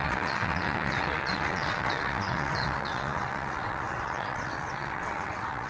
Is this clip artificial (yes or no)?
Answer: yes